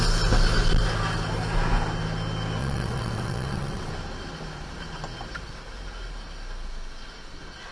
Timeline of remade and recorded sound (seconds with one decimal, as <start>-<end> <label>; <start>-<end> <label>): 0.0-2.6 recorded; 2.6-3.9 remade; 3.9-7.7 recorded

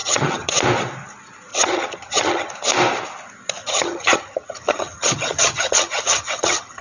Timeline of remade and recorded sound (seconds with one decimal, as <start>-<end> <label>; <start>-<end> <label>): 0.0-0.5 remade; 0.5-1.5 recorded; 1.5-2.5 remade; 2.5-3.6 recorded; 3.6-6.8 remade

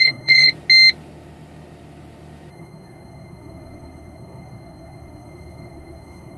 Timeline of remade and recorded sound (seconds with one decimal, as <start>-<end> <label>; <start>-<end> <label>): 0.0-0.5 remade; 0.5-2.5 recorded; 2.5-6.4 remade

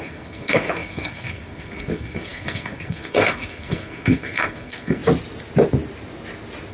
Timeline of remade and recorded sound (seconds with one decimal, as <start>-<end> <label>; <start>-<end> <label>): 0.0-5.0 remade; 5.0-6.7 recorded